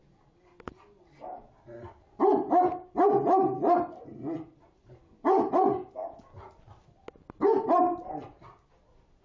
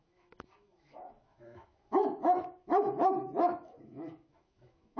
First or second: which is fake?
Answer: second